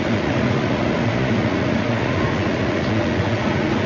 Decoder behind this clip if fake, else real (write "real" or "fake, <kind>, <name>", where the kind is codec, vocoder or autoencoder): fake, vocoder, Vocos